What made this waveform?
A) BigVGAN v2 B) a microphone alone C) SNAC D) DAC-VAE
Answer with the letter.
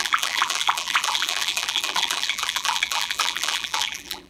A